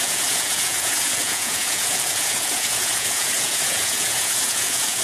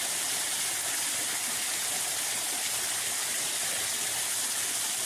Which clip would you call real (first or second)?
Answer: second